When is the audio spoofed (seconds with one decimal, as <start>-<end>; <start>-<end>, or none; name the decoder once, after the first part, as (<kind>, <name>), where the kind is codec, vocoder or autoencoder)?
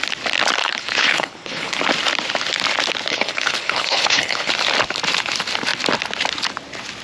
0.6-1.8 (codec, HILCodec); 3.1-4.5